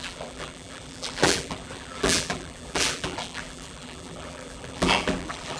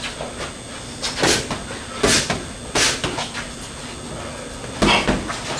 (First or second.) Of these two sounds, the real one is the second